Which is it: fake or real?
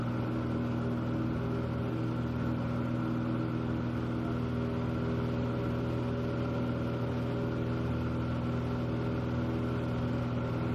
real